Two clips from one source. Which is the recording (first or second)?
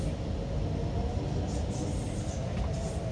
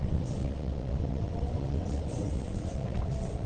first